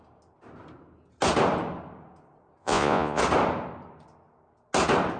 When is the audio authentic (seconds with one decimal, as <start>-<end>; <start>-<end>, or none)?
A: 0.0-2.6; 3.2-5.2